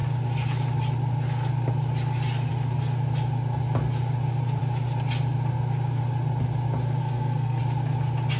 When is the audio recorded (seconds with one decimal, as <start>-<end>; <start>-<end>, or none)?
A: 0.0-7.0; 7.6-8.4